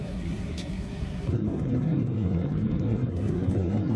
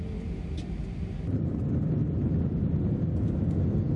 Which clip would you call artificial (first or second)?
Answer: first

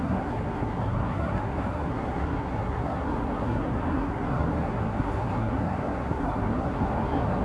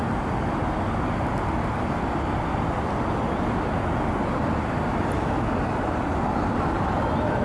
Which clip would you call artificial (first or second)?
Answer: first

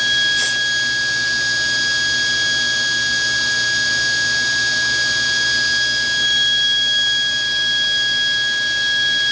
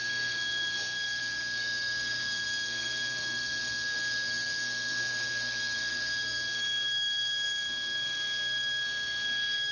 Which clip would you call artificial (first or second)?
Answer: second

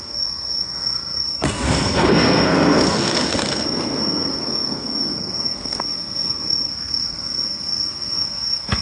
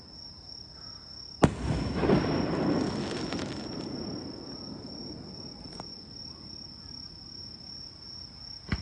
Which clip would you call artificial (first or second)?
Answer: first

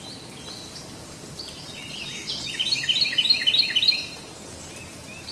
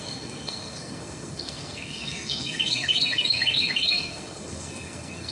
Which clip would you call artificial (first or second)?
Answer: second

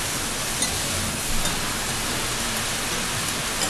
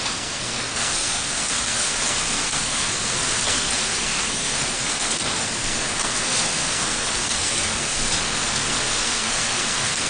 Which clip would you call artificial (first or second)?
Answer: second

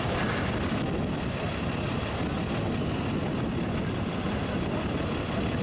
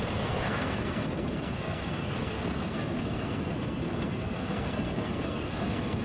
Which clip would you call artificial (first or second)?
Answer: second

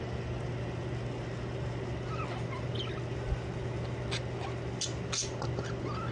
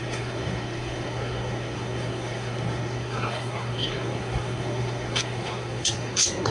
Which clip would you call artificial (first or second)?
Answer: second